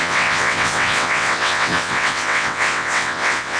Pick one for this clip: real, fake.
fake